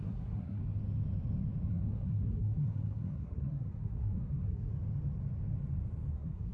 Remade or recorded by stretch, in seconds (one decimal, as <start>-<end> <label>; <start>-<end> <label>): 0.0-0.6 remade; 0.6-1.7 recorded; 1.7-4.7 remade; 4.7-6.1 recorded; 6.1-6.5 remade